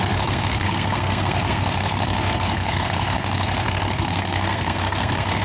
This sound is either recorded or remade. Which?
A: remade